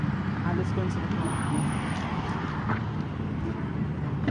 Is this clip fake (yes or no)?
no